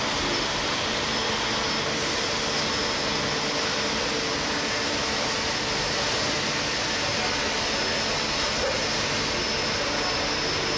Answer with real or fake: real